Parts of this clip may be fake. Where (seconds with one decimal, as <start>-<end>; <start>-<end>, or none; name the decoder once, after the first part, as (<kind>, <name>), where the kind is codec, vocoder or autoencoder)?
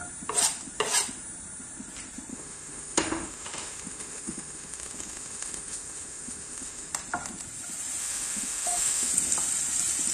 2.3-6.9 (autoencoder, DAC-VAE); 8.0-9.1